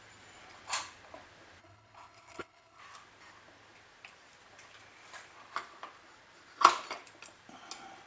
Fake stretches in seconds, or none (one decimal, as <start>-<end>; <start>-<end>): 1.6-2.8